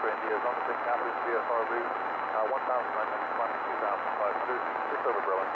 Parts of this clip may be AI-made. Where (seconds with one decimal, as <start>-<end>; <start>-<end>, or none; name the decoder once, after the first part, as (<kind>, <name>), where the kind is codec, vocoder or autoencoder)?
4.6-5.5 (autoencoder, DAC-VAE)